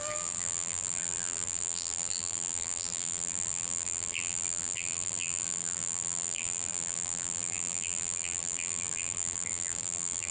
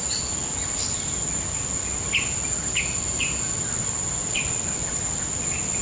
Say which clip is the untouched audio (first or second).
second